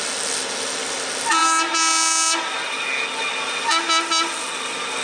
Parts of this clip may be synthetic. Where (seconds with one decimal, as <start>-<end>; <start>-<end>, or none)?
none